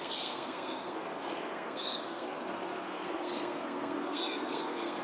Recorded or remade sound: remade